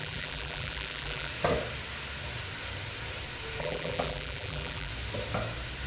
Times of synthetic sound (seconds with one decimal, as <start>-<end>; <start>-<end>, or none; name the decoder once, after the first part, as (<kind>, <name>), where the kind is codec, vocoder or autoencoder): 0.0-1.3 (vocoder, BigVGAN v2); 3.6-4.9